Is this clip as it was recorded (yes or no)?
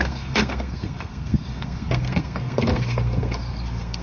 no